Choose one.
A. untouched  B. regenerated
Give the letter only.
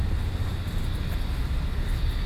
A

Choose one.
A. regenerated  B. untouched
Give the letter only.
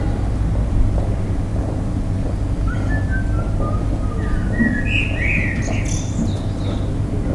B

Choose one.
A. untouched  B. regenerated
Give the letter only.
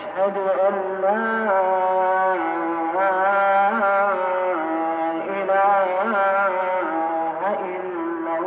A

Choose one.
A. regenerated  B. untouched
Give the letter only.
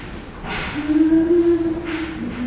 B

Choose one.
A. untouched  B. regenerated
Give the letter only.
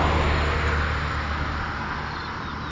A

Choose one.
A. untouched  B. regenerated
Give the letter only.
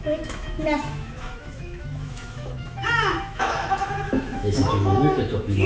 B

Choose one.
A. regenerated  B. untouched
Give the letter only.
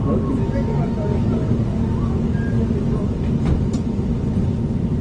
B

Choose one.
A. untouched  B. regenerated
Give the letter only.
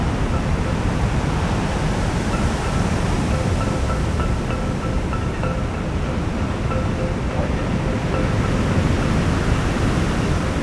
A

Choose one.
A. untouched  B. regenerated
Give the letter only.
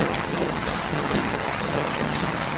B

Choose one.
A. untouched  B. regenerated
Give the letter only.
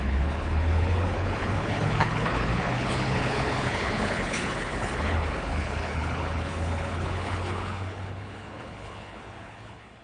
B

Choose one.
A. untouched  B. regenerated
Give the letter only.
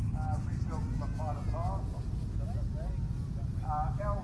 A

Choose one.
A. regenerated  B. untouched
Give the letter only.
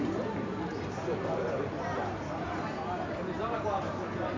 B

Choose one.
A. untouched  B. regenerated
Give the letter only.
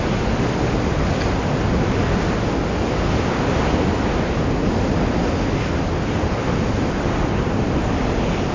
A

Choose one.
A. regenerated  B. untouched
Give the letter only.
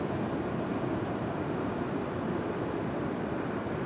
B